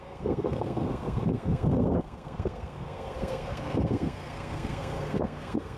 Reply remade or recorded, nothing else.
remade